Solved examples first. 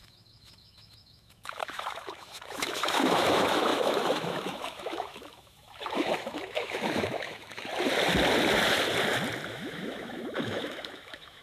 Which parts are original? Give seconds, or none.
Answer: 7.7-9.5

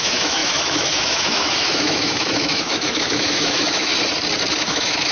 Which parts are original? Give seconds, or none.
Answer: 3.9-4.5

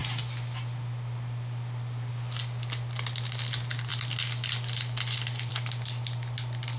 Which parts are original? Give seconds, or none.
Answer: 0.0-6.8

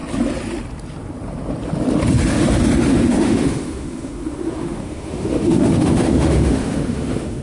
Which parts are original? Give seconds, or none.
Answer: 0.0-2.9